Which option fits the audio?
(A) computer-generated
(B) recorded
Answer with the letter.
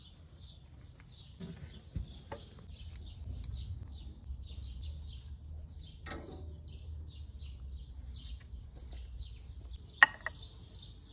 B